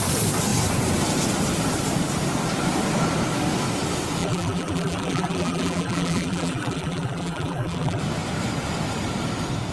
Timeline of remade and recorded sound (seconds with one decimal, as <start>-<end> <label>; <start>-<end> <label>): 0.0-4.2 recorded; 4.2-8.0 remade; 8.0-9.7 recorded